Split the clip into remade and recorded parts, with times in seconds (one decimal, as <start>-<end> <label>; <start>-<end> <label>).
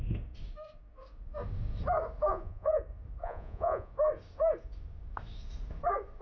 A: 0.0-2.3 recorded; 2.3-2.8 remade; 2.8-3.2 recorded; 3.2-3.9 remade; 3.9-6.2 recorded